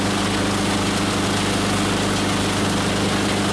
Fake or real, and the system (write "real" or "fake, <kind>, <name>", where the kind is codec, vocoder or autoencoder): real